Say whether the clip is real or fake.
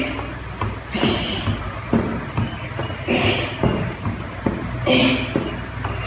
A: real